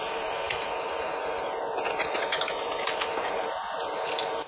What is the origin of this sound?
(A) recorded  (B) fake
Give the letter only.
A